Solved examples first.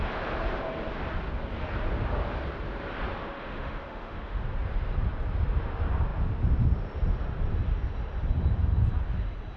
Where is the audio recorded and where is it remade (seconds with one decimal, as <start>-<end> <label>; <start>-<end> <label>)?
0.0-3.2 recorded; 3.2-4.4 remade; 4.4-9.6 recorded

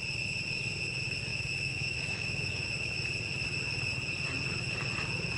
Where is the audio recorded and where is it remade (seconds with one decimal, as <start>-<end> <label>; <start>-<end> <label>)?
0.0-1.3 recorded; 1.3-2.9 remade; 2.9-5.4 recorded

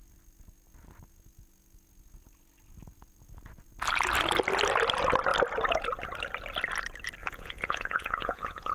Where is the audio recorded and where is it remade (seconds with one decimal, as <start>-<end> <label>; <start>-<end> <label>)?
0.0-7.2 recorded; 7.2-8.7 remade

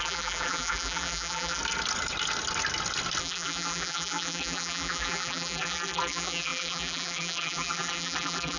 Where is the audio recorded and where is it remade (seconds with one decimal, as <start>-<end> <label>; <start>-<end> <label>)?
0.0-1.6 remade; 1.6-3.2 recorded; 3.2-8.6 remade

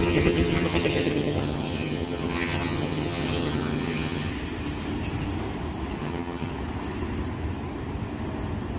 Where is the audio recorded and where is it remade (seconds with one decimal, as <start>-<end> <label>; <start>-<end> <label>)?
0.0-4.3 remade; 4.3-6.0 recorded; 6.0-6.5 remade; 6.5-8.8 recorded

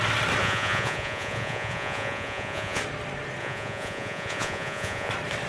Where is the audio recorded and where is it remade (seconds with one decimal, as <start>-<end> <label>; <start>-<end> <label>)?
0.0-0.4 recorded; 0.4-2.8 remade; 2.8-3.4 recorded; 3.4-5.1 remade; 5.1-5.5 recorded

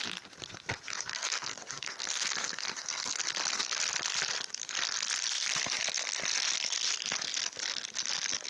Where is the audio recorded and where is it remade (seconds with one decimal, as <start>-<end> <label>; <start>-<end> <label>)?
0.0-1.1 recorded; 1.1-3.2 remade; 3.2-8.5 recorded